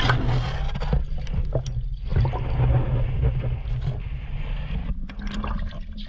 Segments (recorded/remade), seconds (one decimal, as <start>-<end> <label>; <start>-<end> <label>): 0.0-6.1 recorded